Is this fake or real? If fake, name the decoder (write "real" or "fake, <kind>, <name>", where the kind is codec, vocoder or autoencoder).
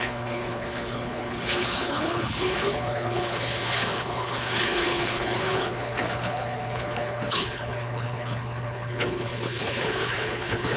fake, codec, HILCodec